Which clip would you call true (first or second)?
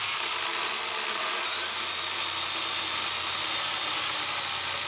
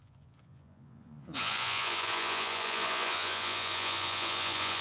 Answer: first